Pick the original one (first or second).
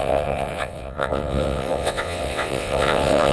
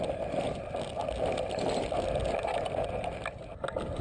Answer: second